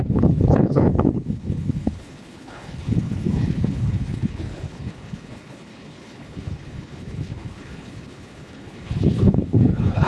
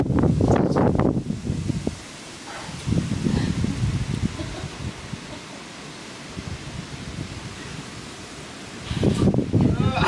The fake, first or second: first